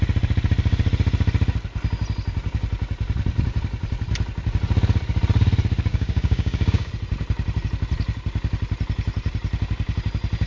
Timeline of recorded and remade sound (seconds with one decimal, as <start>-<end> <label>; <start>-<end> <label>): 0.0-5.9 recorded; 5.9-6.9 remade; 6.9-10.5 recorded